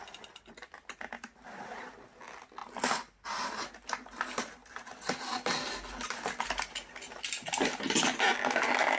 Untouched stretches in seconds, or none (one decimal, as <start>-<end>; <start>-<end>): 0.0-9.0